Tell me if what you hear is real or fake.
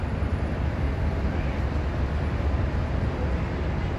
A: real